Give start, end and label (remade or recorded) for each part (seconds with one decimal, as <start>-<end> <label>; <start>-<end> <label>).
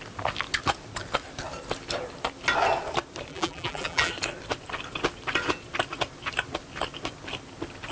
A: 0.0-3.3 recorded; 3.3-4.1 remade; 4.1-7.9 recorded